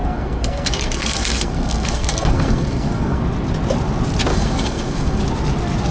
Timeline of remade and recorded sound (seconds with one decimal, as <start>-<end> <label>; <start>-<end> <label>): 0.0-3.2 remade; 3.2-4.3 recorded; 4.3-5.2 remade; 5.2-5.9 recorded